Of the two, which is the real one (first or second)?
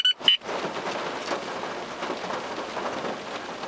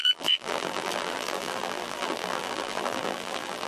first